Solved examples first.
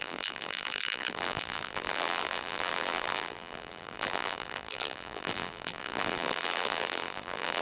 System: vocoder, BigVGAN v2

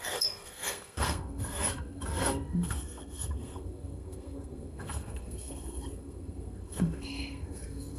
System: codec, SNAC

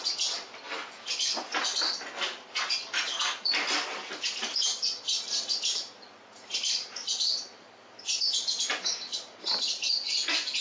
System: none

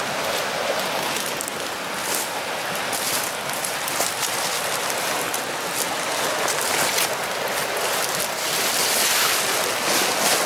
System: none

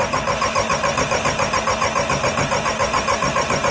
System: none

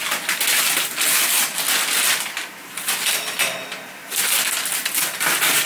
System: none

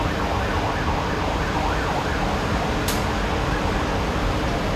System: none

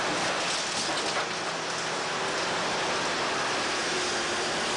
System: none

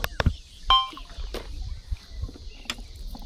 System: none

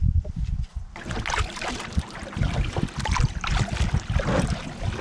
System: none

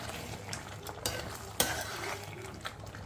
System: none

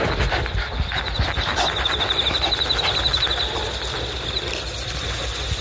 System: none